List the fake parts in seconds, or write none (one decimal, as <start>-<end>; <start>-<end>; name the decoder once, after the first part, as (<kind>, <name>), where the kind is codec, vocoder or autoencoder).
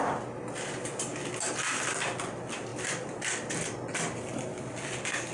none